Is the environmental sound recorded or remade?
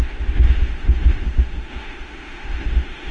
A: remade